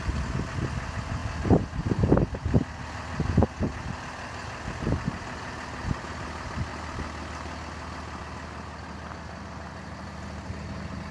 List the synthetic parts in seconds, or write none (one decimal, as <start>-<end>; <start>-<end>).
none